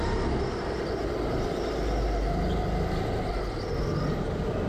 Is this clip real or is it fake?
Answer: real